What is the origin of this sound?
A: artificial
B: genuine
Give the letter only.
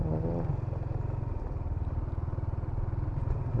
B